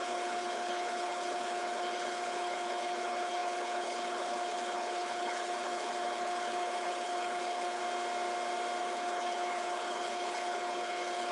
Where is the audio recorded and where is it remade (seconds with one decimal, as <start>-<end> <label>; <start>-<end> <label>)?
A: 0.0-7.8 remade; 7.8-8.8 recorded; 8.8-11.3 remade